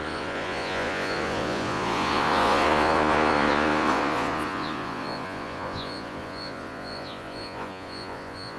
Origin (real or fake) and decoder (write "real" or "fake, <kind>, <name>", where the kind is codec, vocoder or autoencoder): fake, vocoder, Vocos